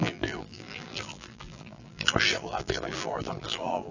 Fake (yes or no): yes